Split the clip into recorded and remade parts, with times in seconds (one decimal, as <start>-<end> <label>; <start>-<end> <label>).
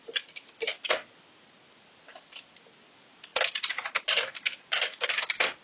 0.0-5.6 recorded